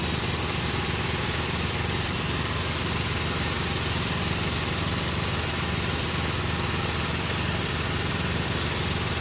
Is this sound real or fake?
fake